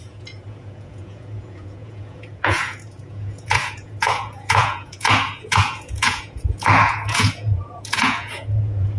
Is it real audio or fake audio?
fake